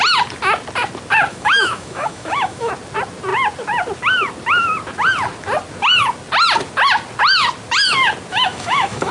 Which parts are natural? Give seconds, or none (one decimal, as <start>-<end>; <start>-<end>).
0.0-1.3; 2.7-8.3